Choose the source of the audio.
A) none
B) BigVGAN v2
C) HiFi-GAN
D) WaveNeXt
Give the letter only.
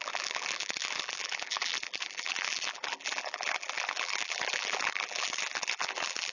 B